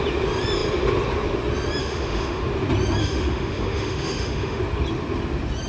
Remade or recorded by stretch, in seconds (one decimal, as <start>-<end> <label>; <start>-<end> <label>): 0.0-1.8 recorded; 1.8-2.4 remade; 2.4-3.0 recorded; 3.0-4.6 remade; 4.6-5.7 recorded